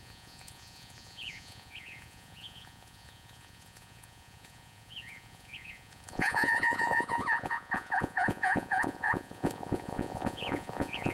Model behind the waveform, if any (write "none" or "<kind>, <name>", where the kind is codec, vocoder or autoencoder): vocoder, Vocos